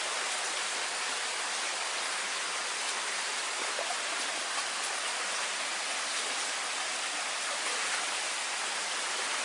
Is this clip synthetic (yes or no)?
no